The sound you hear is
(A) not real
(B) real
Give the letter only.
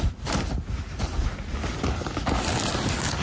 B